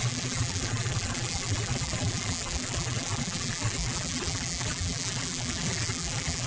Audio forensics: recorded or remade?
remade